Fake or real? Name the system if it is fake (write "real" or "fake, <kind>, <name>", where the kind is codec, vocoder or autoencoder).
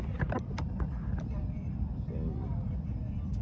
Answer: real